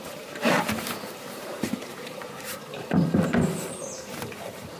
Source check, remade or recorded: remade